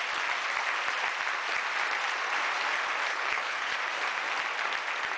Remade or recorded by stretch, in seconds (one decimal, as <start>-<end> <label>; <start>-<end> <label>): 0.0-3.1 recorded; 3.1-3.7 remade; 3.7-5.2 recorded